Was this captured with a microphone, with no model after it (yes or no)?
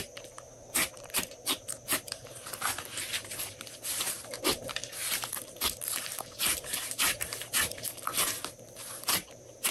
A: no